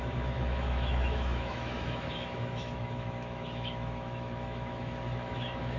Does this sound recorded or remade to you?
remade